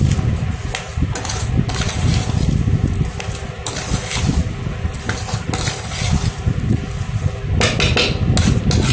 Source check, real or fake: real